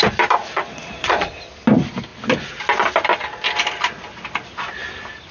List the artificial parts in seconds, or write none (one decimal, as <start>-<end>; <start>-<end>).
0.4-1.3

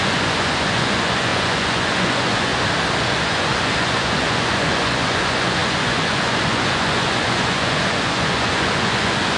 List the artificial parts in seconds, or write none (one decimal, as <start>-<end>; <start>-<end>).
0.0-2.5; 3.0-9.4

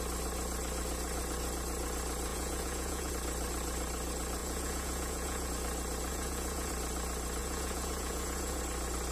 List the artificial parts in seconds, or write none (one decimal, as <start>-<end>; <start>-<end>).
2.3-3.1; 4.4-5.5; 6.1-6.7; 7.4-8.6

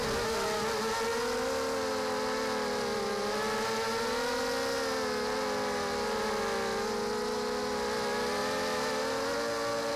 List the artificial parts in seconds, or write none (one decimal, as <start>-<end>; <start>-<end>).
none

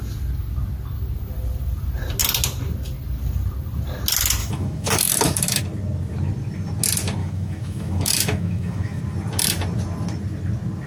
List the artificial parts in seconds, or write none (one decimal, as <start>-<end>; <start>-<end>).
4.4-5.6; 7.2-9.0

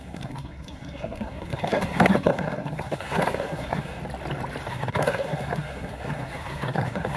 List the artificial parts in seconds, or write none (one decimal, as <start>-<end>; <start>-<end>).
0.0-4.0; 4.7-7.2

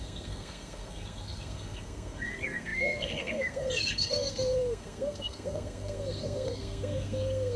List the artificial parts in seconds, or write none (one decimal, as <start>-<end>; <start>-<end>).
0.0-7.6